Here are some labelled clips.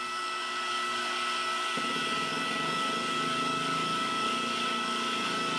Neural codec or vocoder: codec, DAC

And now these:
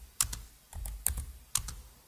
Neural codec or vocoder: none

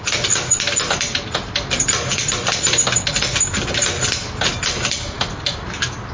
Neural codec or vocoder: none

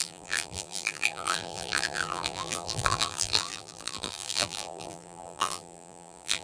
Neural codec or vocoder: vocoder, BigVGAN v2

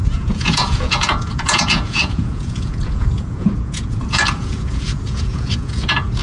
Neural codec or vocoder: vocoder, Vocos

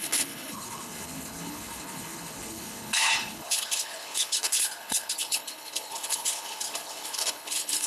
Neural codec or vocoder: codec, HILCodec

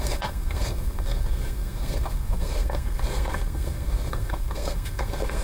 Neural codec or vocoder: codec, SNAC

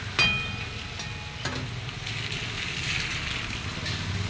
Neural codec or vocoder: none